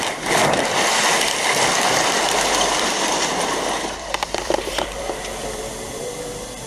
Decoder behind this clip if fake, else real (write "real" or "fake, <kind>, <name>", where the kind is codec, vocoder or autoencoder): fake, vocoder, BigVGAN v2